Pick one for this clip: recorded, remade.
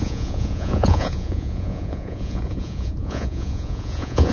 remade